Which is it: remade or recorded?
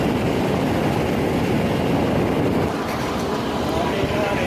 recorded